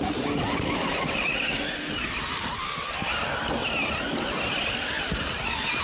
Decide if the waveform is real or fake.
real